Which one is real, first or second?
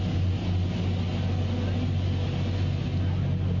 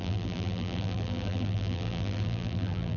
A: first